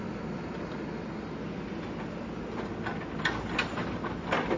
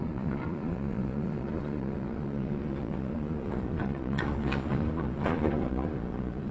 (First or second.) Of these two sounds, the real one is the first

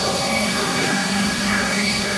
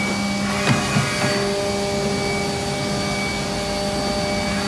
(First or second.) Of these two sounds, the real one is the second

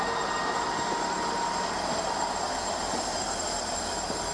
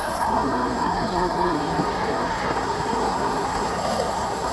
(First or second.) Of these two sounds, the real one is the first